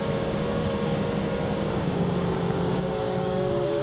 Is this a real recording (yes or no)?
no